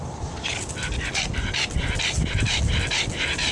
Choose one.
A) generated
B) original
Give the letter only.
B